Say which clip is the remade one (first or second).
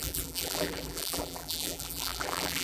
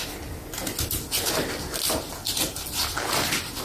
first